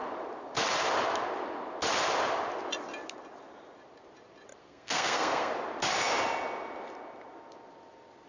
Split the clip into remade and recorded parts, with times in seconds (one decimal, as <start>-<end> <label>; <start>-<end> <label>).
0.0-4.6 recorded; 4.6-5.5 remade; 5.5-8.3 recorded